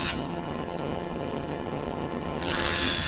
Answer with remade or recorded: remade